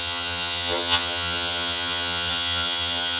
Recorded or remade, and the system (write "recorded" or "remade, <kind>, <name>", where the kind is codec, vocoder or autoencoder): remade, vocoder, HiFi-GAN